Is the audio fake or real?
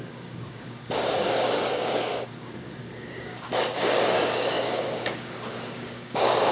fake